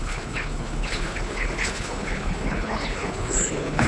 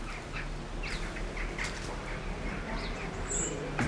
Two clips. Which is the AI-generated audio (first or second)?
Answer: first